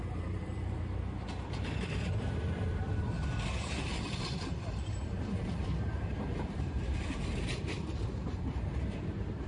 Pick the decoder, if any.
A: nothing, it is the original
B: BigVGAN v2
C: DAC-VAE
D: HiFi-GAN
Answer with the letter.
B